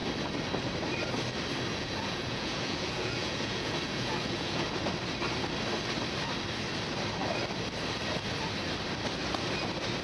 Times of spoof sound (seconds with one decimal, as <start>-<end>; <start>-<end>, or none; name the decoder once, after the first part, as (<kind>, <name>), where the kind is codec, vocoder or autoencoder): 1.7-4.7 (vocoder, Vocos)